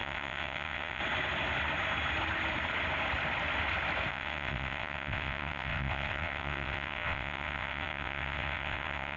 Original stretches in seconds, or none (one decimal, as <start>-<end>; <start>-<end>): 1.0-4.1